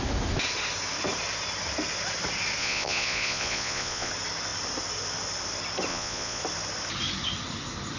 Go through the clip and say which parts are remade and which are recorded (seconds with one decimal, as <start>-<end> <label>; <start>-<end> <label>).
0.0-2.6 recorded; 2.6-4.1 remade; 4.1-5.9 recorded; 5.9-6.4 remade; 6.4-8.0 recorded